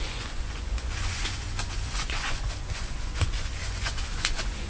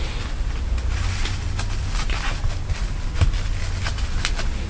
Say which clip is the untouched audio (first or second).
second